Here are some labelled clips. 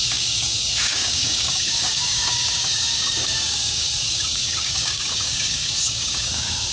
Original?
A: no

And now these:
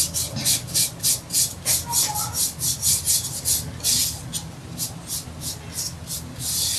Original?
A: yes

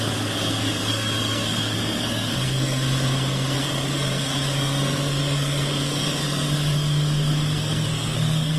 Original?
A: no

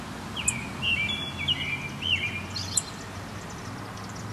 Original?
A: yes